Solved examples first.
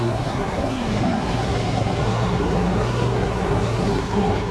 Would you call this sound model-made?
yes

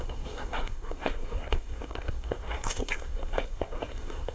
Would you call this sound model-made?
yes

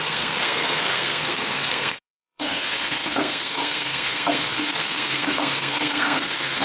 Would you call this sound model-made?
yes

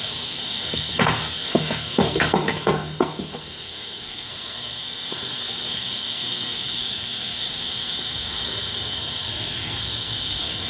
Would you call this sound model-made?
yes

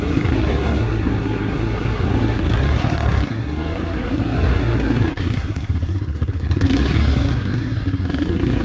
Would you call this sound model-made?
yes